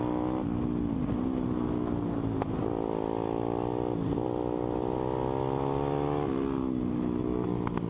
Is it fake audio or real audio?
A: real